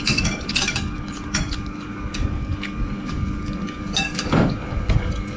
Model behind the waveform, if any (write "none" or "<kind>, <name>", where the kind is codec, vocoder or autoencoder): codec, DAC